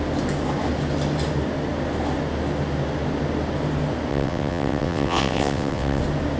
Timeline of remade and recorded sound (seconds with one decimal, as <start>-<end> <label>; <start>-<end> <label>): 0.0-4.1 recorded; 4.1-6.0 remade; 6.0-6.4 recorded